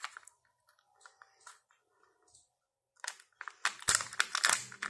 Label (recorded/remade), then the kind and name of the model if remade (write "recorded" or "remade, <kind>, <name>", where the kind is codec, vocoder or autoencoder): recorded